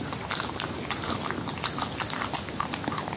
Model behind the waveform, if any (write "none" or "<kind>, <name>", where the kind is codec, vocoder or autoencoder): none